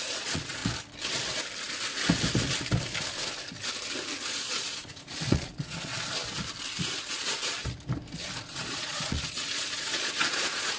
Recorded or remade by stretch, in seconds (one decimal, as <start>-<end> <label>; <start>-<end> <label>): 0.0-0.6 remade; 0.6-4.3 recorded; 4.3-5.9 remade; 5.9-6.8 recorded; 6.8-7.6 remade; 7.6-8.5 recorded; 8.5-10.8 remade